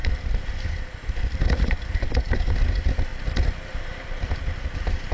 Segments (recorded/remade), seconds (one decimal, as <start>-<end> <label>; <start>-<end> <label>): 0.0-5.1 recorded